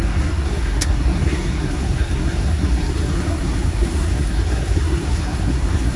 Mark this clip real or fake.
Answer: fake